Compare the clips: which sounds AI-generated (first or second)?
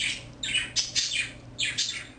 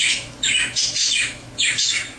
second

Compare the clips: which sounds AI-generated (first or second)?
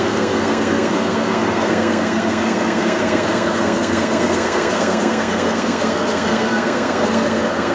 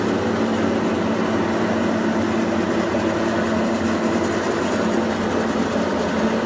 first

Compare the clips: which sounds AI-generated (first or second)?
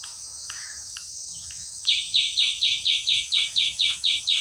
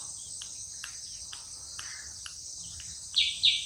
first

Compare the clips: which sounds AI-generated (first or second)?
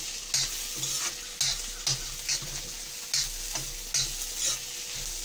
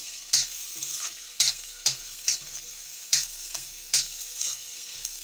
second